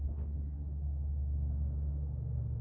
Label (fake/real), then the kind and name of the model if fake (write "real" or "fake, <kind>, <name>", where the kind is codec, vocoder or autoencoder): fake, autoencoder, DAC-VAE